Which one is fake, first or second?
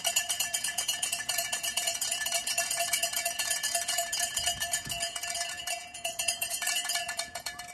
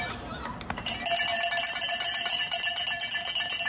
first